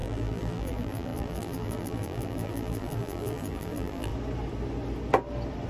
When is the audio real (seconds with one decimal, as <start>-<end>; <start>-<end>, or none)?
4.1-5.7